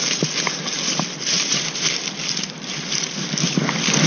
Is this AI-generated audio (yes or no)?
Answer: no